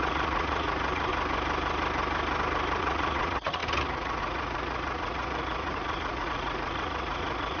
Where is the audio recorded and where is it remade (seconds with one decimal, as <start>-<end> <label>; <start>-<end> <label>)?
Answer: 0.0-1.1 remade; 1.1-2.8 recorded; 2.8-7.6 remade